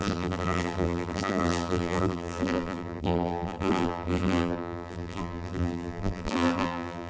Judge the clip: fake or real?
fake